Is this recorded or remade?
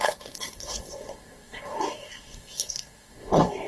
remade